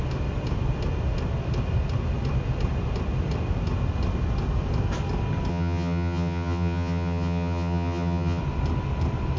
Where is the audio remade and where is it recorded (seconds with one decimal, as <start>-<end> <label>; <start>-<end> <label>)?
0.0-5.5 recorded; 5.5-8.4 remade; 8.4-9.4 recorded

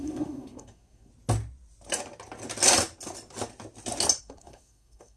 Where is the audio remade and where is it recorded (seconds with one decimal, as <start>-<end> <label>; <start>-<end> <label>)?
0.0-1.1 remade; 1.1-4.2 recorded; 4.2-5.2 remade